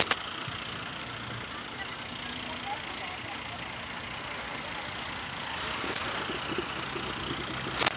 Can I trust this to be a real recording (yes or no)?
yes